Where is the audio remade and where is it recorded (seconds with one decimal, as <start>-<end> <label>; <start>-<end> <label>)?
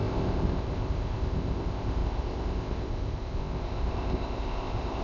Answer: 0.0-5.0 remade